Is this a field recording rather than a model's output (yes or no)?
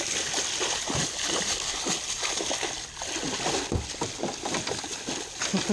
yes